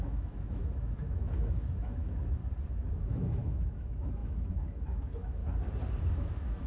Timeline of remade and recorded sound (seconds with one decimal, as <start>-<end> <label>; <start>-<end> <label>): 0.0-2.4 remade; 2.4-2.9 recorded; 2.9-5.4 remade; 5.4-6.1 recorded; 6.1-6.7 remade